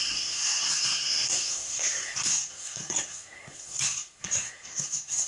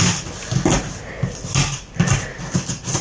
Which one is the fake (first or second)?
first